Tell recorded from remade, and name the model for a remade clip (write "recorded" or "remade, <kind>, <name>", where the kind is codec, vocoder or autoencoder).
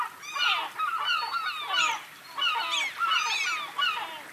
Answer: recorded